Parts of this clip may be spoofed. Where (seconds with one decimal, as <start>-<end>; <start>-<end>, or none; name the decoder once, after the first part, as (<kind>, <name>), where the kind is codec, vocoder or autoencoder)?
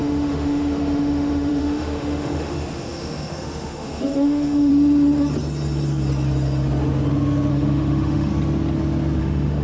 0.0-4.7 (autoencoder, DAC-VAE); 7.5-8.3; 9.2-9.6